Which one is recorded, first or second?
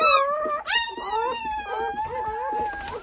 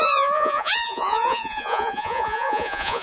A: first